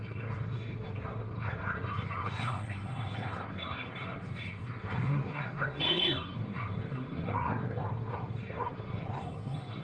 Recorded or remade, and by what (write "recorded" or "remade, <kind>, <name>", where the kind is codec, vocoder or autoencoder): remade, codec, SNAC